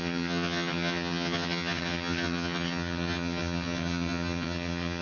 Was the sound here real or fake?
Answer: fake